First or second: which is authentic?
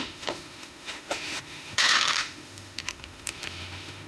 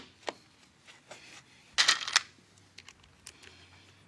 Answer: second